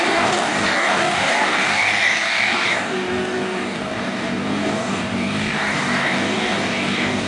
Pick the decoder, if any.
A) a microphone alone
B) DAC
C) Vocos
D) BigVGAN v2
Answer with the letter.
B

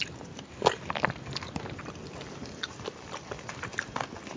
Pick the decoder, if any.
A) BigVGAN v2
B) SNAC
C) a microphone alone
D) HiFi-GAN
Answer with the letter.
C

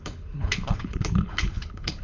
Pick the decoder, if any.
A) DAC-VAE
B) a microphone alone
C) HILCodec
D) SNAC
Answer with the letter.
C